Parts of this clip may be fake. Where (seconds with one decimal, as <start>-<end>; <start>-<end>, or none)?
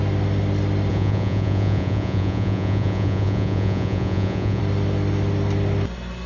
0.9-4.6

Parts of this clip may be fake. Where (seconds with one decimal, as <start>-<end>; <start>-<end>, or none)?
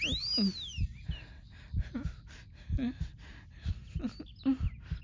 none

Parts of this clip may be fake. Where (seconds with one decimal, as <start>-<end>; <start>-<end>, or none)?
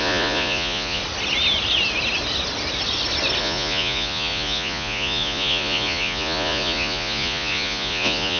0.0-1.0; 3.4-8.4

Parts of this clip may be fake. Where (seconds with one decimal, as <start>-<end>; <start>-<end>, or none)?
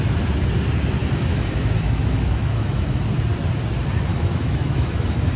1.0-3.0; 4.1-5.4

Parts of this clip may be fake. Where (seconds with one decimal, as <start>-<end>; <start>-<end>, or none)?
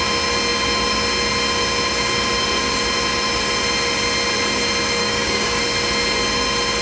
5.0-5.6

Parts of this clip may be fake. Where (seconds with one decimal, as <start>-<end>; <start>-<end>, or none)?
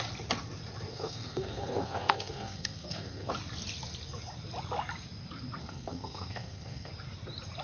0.9-3.3; 5.6-6.9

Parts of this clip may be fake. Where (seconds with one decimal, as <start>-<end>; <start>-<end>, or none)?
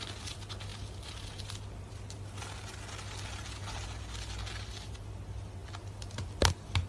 none